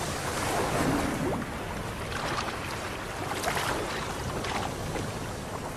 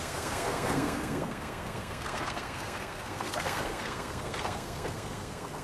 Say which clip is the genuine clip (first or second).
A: first